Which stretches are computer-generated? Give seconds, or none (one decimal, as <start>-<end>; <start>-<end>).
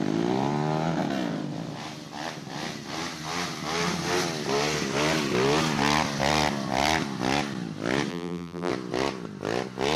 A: 8.1-8.7